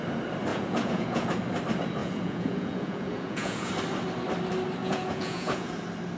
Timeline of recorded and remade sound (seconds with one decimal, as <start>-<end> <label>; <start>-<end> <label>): 0.0-0.5 recorded; 0.5-1.4 remade; 1.4-2.0 recorded; 2.0-3.7 remade; 3.7-4.8 recorded; 4.8-5.8 remade; 5.8-6.2 recorded